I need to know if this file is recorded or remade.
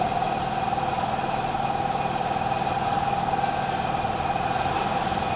recorded